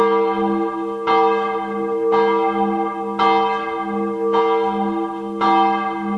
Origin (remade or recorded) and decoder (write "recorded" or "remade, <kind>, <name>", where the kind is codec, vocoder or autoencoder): recorded